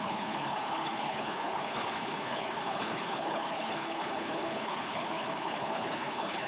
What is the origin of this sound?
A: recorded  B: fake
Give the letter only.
B